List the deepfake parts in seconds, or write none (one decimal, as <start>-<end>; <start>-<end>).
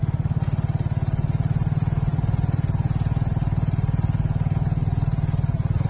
none